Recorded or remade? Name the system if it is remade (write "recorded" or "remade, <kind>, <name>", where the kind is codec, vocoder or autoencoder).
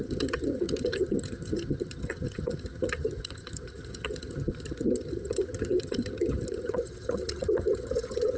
remade, vocoder, HiFi-GAN